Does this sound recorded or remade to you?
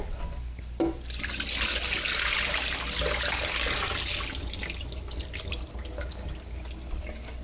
recorded